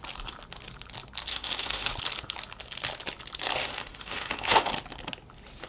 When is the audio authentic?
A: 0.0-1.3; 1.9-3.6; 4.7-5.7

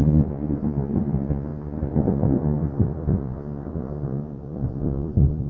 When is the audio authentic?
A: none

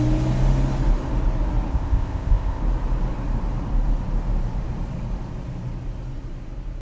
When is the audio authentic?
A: 0.0-1.7; 2.6-6.8

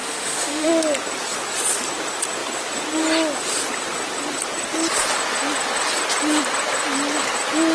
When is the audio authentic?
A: 0.7-7.7

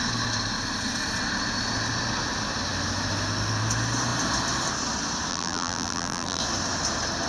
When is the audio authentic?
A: 0.0-5.3; 6.4-7.3